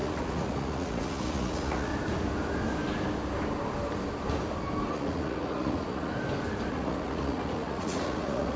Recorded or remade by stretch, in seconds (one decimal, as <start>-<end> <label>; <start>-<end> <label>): 0.0-1.9 remade; 1.9-4.9 recorded; 4.9-6.1 remade; 6.1-6.7 recorded; 6.7-8.6 remade